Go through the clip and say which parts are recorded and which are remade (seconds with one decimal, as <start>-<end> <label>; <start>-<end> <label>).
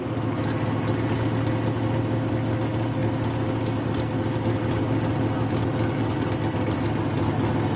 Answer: 0.0-7.8 recorded